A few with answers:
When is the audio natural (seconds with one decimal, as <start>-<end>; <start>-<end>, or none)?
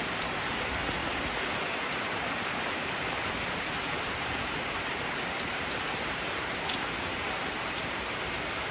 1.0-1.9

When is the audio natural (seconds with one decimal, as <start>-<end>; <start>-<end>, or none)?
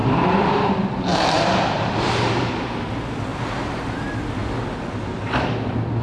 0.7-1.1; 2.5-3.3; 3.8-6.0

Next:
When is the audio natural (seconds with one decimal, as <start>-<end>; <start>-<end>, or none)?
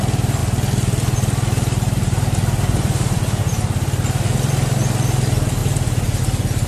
0.0-5.6; 6.2-6.7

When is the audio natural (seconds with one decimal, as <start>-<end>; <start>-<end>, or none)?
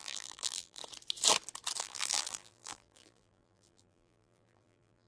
0.8-1.8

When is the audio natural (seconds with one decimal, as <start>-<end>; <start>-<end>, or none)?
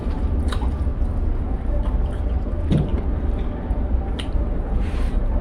0.9-1.4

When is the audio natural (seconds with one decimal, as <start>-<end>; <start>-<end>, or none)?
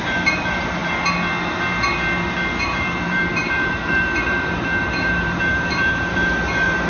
0.8-2.6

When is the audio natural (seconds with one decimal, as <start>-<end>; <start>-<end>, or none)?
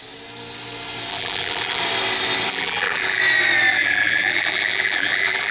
0.0-1.1; 1.8-2.5; 3.2-3.7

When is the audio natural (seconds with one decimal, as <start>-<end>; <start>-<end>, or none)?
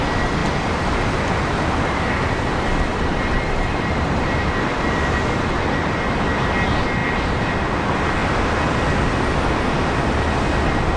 0.0-0.4; 1.2-2.9; 4.9-7.0; 7.5-11.0